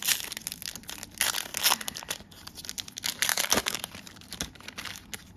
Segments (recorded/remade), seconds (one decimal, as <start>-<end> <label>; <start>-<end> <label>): 0.0-3.3 recorded; 3.3-3.8 remade; 3.8-5.4 recorded